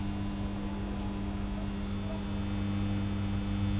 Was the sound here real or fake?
real